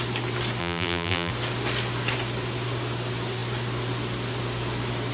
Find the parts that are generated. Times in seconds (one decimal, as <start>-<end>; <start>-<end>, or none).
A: 0.6-1.3